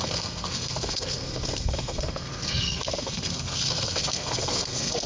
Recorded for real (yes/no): no